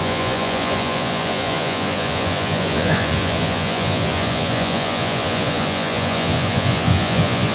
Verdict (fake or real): fake